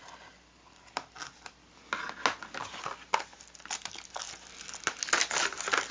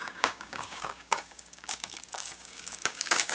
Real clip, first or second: first